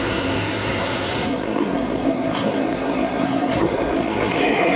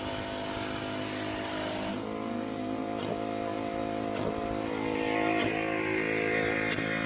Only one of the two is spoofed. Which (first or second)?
first